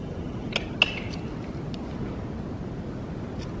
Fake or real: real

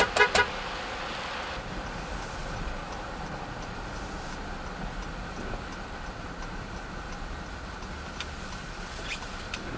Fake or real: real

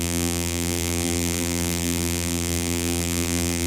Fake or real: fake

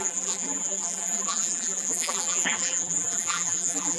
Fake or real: fake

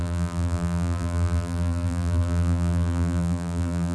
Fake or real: fake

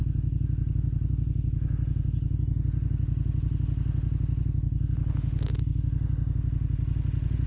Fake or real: real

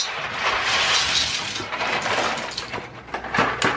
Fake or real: real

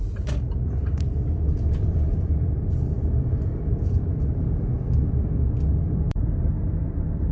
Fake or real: fake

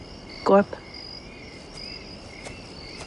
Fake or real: real